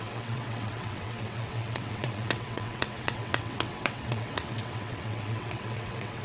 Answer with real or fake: fake